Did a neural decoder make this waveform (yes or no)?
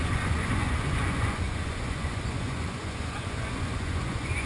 yes